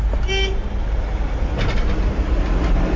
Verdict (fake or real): real